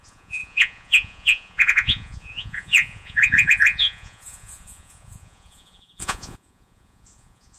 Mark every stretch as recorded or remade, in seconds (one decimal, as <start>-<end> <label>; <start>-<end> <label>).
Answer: 0.0-7.6 remade